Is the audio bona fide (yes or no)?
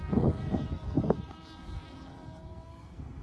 no